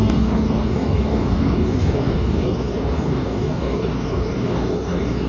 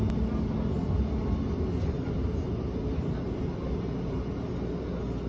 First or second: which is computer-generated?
first